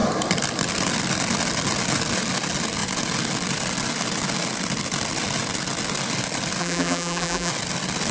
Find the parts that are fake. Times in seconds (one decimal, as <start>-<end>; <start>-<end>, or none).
6.6-7.5